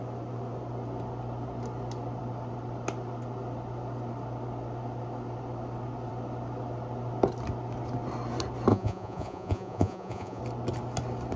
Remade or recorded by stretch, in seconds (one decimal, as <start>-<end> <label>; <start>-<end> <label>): 0.0-8.7 recorded; 8.7-10.4 remade; 10.4-11.4 recorded